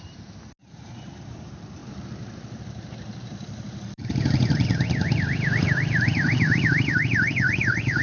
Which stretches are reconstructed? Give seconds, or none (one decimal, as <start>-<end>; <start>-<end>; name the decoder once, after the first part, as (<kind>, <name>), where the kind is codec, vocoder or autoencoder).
0.0-8.0 (vocoder, BigVGAN v2)